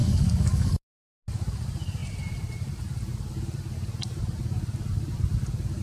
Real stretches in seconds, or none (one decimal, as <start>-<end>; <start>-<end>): 1.0-5.8